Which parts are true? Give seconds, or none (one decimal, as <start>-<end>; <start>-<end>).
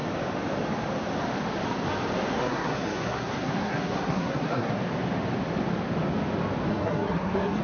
0.0-2.3; 4.8-6.7